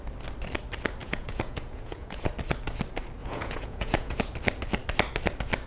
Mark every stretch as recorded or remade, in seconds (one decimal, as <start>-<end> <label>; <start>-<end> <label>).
0.0-1.0 recorded; 1.0-2.3 remade; 2.3-3.2 recorded; 3.2-4.2 remade; 4.2-5.7 recorded